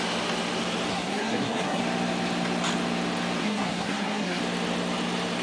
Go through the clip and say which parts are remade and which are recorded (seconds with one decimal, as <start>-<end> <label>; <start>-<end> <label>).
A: 0.0-0.9 recorded; 0.9-1.8 remade; 1.8-3.4 recorded; 3.4-4.4 remade; 4.4-5.4 recorded